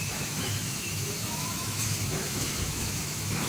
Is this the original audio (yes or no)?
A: no